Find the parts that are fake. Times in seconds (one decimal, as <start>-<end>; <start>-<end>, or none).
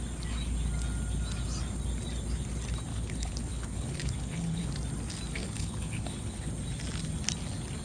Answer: 2.9-4.7; 5.4-6.5